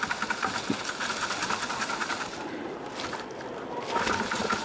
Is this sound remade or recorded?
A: recorded